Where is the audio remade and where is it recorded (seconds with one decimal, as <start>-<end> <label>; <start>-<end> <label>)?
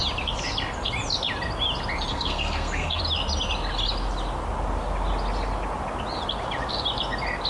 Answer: 0.0-2.1 recorded; 2.1-3.0 remade; 3.0-7.5 recorded